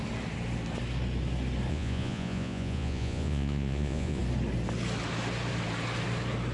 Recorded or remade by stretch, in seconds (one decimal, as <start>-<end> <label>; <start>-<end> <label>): 0.0-1.7 recorded; 1.7-4.2 remade; 4.2-6.5 recorded